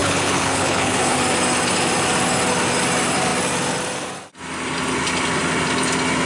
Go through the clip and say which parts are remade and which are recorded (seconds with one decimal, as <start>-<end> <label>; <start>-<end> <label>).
0.0-1.2 remade; 1.2-6.3 recorded